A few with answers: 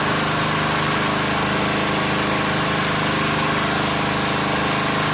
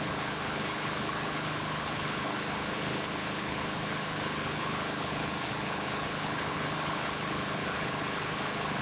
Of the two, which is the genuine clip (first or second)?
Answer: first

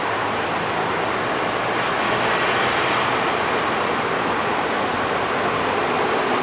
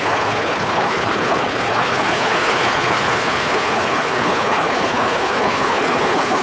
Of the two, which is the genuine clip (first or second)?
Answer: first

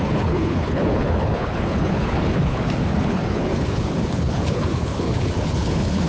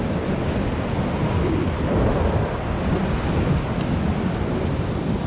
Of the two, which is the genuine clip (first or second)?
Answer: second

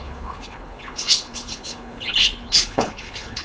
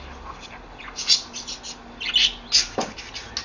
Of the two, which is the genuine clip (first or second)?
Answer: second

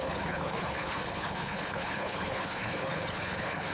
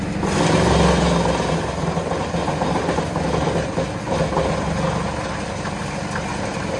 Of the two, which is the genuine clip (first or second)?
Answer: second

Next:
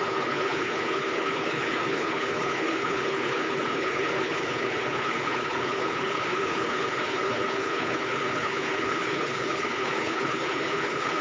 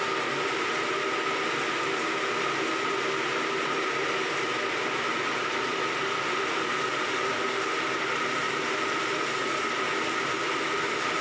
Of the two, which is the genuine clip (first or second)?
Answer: second